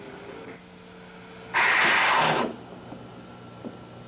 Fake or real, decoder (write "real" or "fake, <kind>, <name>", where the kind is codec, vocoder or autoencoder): real